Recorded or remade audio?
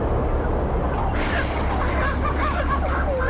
recorded